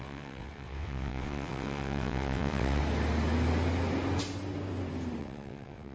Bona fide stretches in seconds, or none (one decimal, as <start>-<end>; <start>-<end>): 2.8-5.2